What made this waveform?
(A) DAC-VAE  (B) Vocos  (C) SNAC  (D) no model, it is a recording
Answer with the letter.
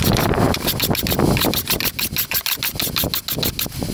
D